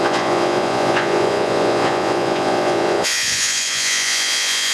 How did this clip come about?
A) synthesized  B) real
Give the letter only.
A